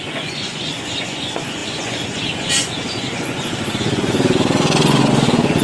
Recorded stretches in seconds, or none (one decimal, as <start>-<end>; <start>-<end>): none